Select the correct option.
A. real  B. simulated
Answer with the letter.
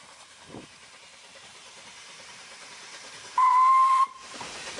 B